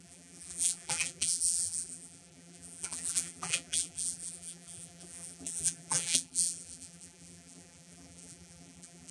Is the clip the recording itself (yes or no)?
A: no